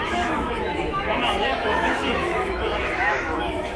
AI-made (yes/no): yes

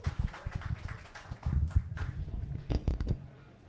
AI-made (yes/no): yes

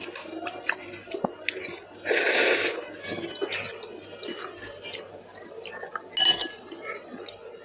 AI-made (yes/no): no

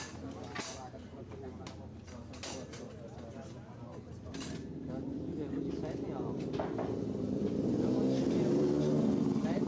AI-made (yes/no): no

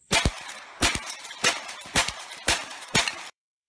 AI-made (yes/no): yes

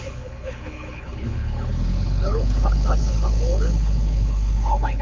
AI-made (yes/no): yes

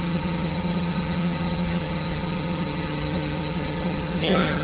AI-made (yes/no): yes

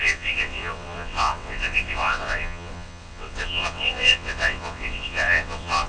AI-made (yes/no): yes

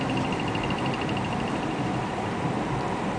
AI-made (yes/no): no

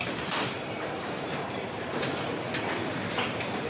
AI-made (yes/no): yes